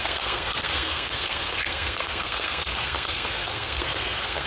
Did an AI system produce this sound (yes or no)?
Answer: yes